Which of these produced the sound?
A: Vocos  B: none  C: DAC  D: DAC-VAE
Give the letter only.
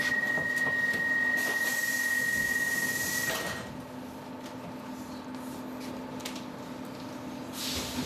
B